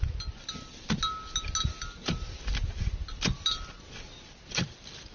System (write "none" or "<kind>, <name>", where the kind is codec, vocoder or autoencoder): none